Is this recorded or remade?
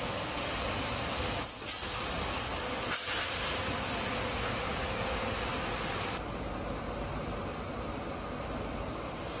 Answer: recorded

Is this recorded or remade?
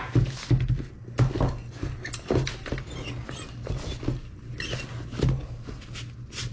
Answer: recorded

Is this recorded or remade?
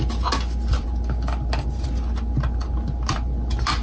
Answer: recorded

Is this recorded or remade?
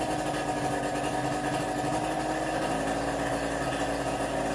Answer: recorded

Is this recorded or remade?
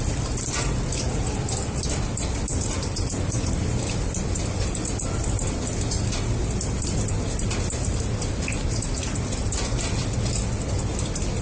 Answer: recorded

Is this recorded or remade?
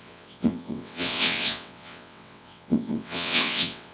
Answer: remade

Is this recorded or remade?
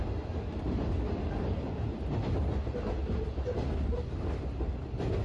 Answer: recorded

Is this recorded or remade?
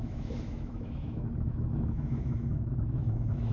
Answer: remade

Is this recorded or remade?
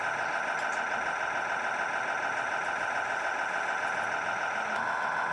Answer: recorded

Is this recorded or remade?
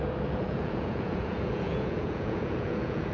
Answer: remade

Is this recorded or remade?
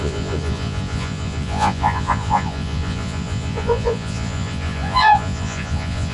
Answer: remade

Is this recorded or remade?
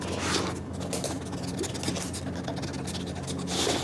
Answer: recorded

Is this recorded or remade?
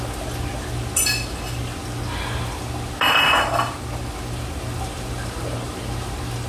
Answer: recorded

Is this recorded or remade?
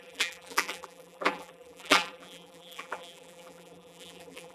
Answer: remade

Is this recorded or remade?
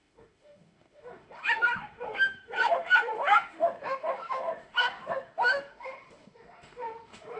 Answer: remade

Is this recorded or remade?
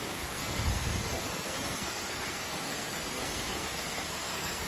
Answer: remade